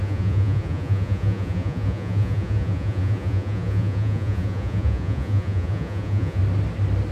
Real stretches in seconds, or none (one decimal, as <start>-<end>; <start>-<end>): 6.4-7.1